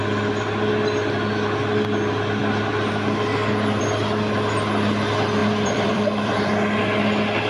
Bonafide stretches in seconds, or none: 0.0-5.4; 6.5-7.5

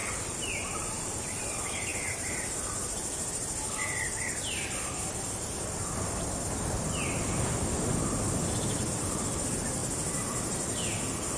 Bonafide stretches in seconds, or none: 1.4-1.9; 4.2-11.4

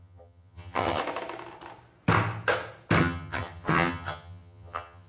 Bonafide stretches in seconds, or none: 1.0-3.0

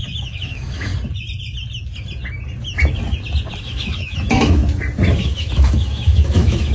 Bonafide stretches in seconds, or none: 0.9-3.6; 4.6-5.2

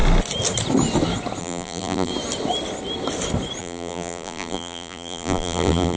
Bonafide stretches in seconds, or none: 0.0-1.4; 2.1-3.6

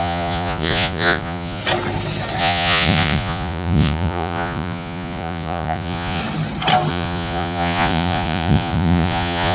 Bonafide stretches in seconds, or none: 1.6-2.4; 6.2-6.9

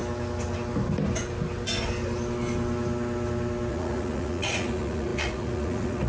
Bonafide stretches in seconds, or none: 0.0-3.7

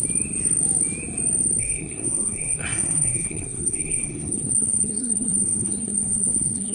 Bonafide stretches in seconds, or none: 0.0-1.6